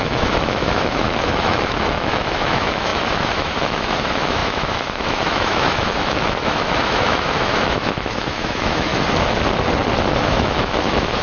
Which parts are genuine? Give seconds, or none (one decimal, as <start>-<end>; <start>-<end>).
8.9-10.2